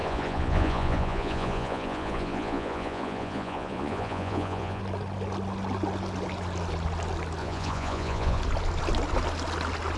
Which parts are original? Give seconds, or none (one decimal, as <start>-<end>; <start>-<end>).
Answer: 4.8-7.4; 8.4-10.0